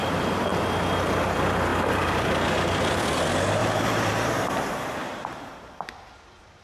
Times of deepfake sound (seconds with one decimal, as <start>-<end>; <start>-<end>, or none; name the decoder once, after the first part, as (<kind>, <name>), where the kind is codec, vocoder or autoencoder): 0.0-0.5 (vocoder, BigVGAN v2); 1.7-3.0; 3.6-5.7